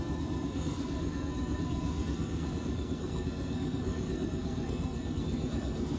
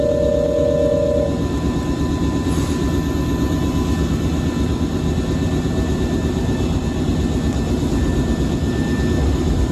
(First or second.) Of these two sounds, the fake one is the first